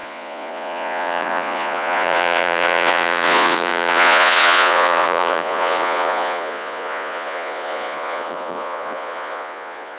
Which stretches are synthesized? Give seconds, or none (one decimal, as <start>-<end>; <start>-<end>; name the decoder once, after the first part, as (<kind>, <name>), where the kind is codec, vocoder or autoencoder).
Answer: 0.0-10.0 (vocoder, Vocos)